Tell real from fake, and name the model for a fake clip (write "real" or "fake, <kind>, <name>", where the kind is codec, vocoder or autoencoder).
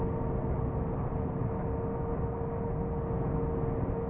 real